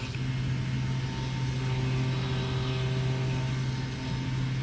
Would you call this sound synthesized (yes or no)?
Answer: no